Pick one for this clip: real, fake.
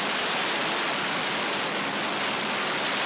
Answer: real